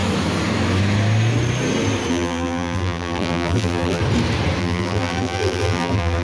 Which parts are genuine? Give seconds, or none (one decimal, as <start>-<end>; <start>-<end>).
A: 0.0-2.1; 4.0-4.6

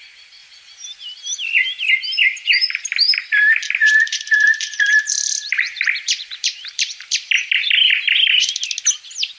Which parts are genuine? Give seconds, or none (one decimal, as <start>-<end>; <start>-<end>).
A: 0.0-3.8; 7.2-9.4

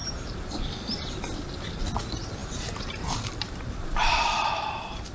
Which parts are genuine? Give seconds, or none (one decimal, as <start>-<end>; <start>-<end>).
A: 0.5-2.4; 4.5-5.1

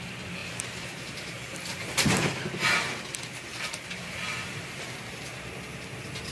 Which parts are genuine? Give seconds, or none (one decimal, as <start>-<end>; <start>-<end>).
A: 0.0-0.4; 2.3-3.5; 4.2-6.3

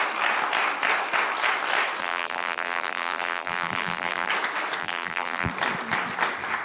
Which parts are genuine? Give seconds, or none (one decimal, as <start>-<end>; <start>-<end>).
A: 0.0-2.0; 4.3-4.8; 5.5-6.6

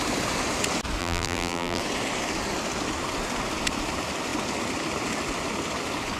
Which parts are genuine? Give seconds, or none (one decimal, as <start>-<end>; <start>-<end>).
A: 0.0-1.0; 1.8-6.2

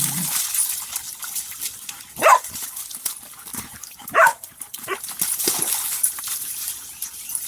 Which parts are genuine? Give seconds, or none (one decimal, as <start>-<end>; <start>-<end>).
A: 0.0-3.5; 5.2-6.6